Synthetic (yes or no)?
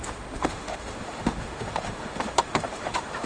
yes